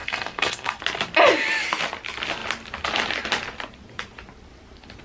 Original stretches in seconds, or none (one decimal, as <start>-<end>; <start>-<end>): 0.8-5.0